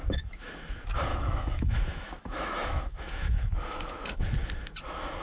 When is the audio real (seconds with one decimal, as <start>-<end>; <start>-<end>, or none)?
0.5-1.1; 4.2-5.2